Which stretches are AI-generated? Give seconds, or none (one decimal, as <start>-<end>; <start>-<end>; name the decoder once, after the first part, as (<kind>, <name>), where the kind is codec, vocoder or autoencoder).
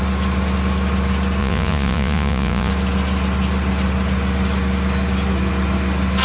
1.4-2.7 (vocoder, Vocos)